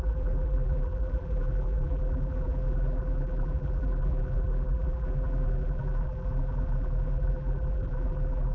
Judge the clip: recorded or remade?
remade